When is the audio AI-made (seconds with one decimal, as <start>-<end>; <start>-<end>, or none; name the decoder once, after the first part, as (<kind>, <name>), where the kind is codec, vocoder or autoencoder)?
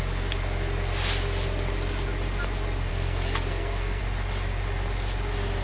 2.9-4.0 (codec, SNAC)